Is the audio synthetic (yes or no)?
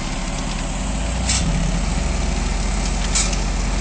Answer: no